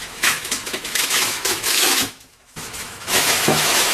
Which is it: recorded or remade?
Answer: remade